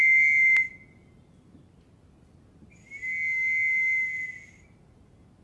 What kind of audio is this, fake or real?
real